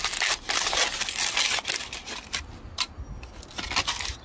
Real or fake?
real